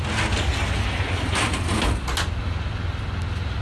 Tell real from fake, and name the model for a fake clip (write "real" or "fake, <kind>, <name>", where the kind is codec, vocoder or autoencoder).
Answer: real